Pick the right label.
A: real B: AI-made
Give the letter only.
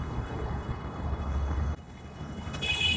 B